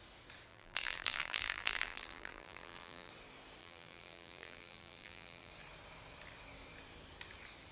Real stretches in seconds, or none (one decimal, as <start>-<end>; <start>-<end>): 0.0-0.5; 3.1-3.6; 5.5-7.7